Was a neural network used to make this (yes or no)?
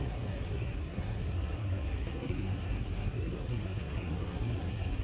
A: yes